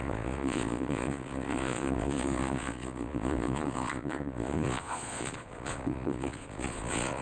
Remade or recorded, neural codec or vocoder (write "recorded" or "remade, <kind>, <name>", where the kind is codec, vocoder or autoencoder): remade, vocoder, Vocos